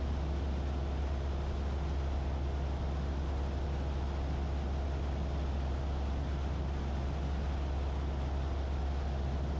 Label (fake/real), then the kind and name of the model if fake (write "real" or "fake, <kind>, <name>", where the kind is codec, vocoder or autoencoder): real